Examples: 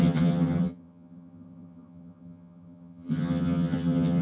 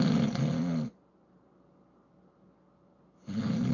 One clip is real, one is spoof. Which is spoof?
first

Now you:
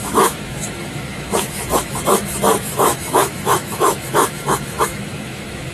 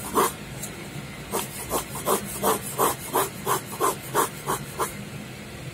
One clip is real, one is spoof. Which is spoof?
first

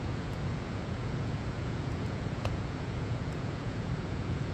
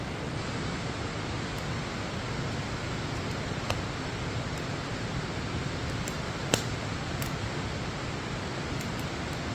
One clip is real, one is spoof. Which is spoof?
first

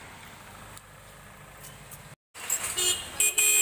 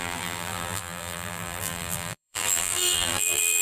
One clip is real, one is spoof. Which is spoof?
second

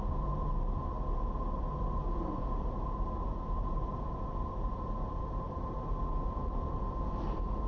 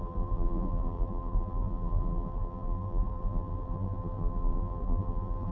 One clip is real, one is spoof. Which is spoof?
second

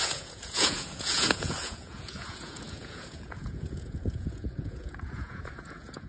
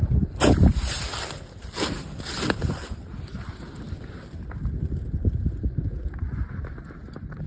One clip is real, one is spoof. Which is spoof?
first